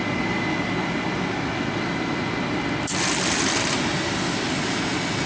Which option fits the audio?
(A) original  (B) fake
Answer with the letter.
A